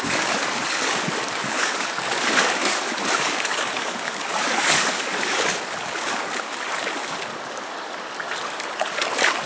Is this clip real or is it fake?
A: fake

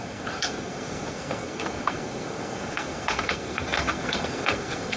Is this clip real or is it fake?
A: fake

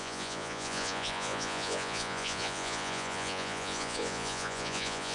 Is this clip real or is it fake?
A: fake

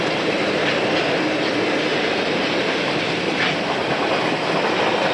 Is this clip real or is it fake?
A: real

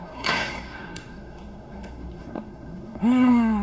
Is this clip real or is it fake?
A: fake